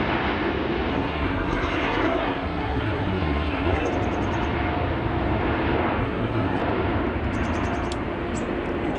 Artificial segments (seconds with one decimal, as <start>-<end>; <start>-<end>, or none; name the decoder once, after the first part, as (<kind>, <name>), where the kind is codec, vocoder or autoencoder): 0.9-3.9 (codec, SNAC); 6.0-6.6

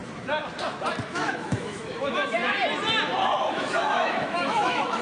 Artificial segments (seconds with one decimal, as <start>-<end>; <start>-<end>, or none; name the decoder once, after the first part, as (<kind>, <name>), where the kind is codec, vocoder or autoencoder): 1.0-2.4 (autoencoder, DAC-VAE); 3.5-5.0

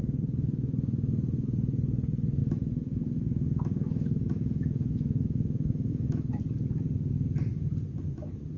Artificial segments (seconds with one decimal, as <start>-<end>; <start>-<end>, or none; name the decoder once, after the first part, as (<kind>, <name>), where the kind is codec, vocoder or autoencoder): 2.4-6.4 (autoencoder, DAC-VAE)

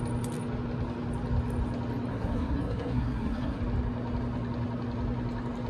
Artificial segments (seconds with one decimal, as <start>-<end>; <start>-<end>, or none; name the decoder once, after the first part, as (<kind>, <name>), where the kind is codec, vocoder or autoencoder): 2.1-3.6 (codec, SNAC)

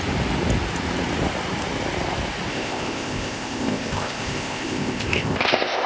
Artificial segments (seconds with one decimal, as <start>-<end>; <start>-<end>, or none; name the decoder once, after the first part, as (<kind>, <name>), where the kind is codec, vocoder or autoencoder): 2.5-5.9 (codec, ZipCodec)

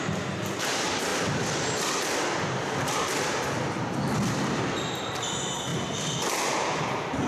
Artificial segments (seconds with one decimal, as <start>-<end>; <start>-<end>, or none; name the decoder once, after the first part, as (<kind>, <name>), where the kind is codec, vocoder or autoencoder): 0.0-1.1 (vocoder, BigVGAN v2); 4.3-5.7; 6.5-7.3